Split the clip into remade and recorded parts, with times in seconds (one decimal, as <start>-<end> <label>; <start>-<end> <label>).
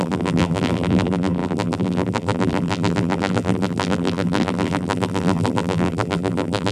0.0-6.7 remade